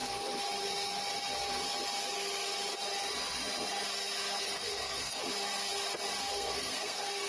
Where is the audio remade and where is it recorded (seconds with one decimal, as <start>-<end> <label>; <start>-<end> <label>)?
0.0-4.4 recorded; 4.4-5.2 remade; 5.2-6.3 recorded; 6.3-7.3 remade